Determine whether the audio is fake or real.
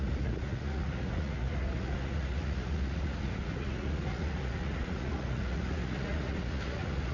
fake